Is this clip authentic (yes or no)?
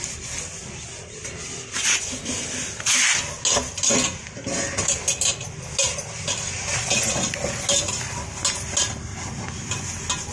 yes